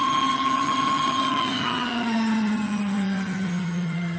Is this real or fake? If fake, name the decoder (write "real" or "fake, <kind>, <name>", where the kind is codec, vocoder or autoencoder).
fake, vocoder, HiFi-GAN